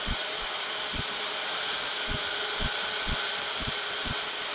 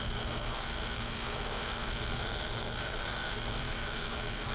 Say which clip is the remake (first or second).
second